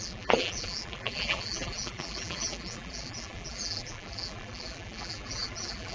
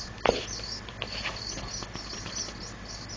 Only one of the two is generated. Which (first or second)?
first